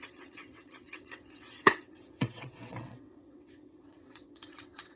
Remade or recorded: remade